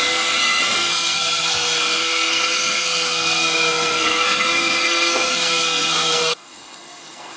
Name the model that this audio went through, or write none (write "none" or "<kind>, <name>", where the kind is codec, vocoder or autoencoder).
codec, SNAC